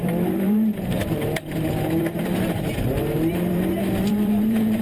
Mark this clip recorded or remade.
remade